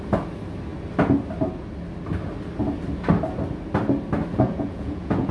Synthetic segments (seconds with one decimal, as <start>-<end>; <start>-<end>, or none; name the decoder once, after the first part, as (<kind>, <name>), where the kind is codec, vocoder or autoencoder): 4.3-5.3 (vocoder, Vocos)